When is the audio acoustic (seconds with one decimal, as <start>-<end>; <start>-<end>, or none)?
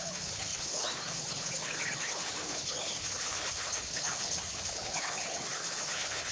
none